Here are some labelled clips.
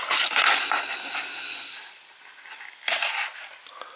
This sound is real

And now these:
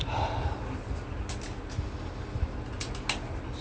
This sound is real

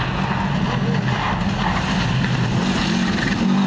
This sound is real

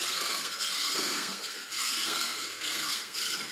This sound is fake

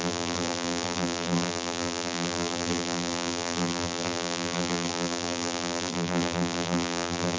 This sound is fake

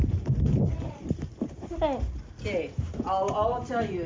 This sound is real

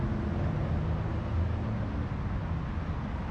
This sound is real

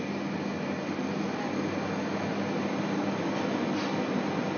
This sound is real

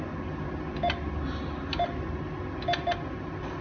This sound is real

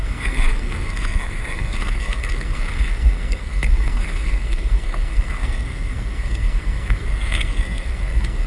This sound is fake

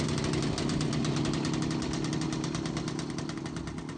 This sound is real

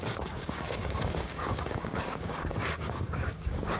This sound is fake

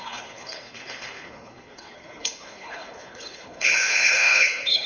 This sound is fake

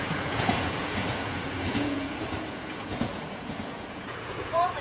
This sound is fake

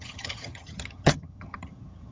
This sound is fake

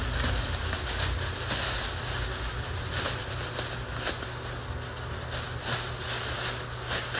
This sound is real